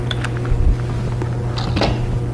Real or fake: real